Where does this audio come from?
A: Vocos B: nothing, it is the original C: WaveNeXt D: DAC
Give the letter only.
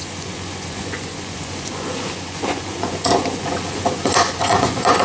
A